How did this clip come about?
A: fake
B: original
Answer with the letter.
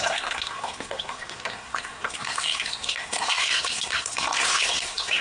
A